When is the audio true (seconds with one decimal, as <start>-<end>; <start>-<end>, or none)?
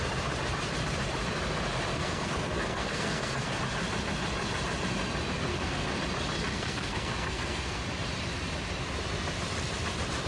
0.0-1.9; 3.6-5.5; 6.0-6.5; 7.8-10.3